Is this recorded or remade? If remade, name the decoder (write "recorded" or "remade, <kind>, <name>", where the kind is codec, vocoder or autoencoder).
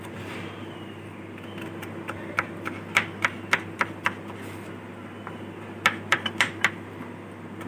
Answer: recorded